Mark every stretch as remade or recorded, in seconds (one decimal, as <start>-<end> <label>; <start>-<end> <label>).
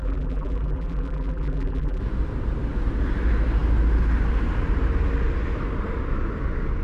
0.0-2.0 remade; 2.0-6.8 recorded